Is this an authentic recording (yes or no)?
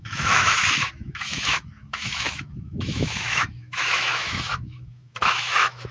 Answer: no